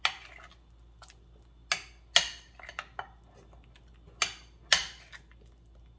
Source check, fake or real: real